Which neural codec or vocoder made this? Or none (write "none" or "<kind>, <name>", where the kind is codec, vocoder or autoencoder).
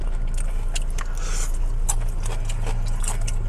none